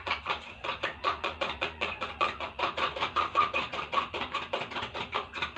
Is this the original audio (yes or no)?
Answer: no